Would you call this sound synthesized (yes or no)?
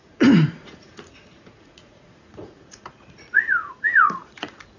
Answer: yes